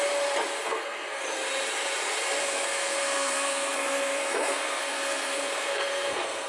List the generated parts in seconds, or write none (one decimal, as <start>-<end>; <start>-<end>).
0.6-1.2; 2.4-6.5